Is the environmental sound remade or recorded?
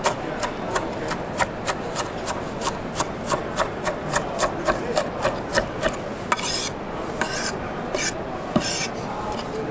recorded